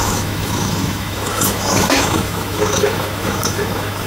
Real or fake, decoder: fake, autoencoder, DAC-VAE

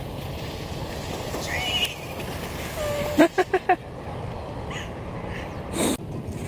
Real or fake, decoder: real